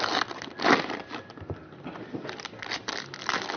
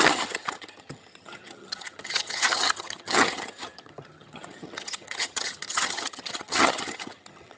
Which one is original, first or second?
first